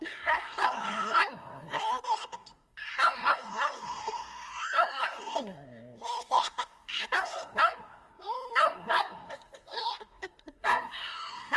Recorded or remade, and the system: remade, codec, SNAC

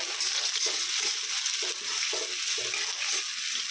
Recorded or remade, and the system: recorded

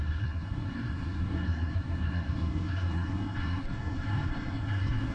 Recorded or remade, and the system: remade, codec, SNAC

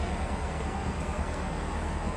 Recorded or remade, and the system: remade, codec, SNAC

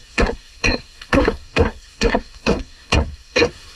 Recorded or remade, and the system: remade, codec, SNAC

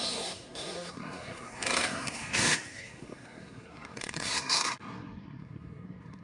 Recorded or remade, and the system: remade, codec, SNAC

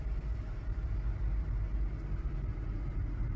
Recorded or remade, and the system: recorded